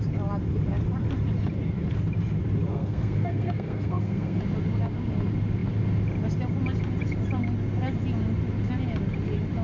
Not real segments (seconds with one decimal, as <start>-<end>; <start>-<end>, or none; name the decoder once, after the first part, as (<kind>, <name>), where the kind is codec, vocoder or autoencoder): 2.7-4.4 (codec, SNAC)